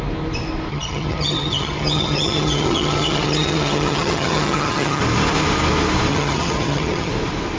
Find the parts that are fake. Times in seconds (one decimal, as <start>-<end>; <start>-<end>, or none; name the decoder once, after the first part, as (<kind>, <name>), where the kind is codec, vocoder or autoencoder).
0.7-5.0 (vocoder, HiFi-GAN); 6.1-7.1